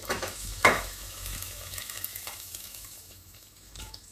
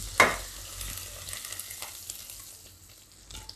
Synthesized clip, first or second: first